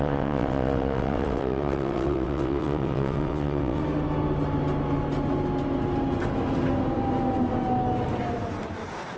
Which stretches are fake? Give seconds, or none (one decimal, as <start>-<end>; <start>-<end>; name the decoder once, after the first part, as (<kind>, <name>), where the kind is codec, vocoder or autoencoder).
0.0-3.8 (vocoder, WaveNeXt)